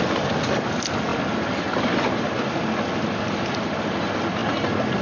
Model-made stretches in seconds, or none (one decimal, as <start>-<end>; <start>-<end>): none